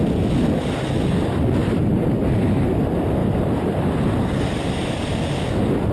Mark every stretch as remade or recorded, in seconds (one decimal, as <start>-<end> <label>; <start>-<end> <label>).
0.0-1.6 recorded; 1.6-2.3 remade; 2.3-3.2 recorded; 3.2-3.9 remade; 3.9-5.9 recorded